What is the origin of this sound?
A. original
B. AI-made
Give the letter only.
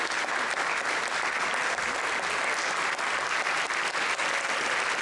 A